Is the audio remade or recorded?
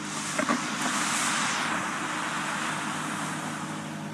recorded